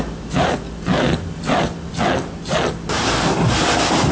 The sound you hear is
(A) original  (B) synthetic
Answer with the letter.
A